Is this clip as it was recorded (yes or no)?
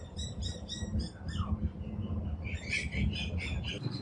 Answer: no